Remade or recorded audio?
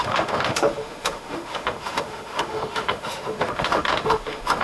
remade